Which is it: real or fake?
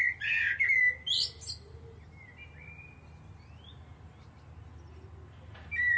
real